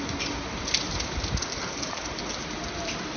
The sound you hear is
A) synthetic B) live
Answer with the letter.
B